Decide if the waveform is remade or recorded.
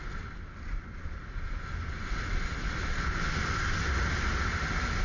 recorded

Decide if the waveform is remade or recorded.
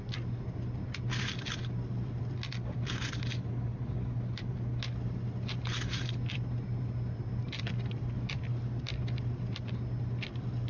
recorded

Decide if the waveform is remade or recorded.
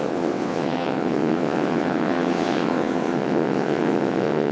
remade